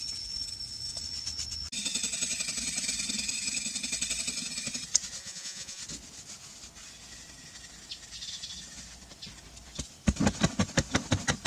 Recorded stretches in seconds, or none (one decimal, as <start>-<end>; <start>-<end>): 0.0-5.2; 5.8-11.5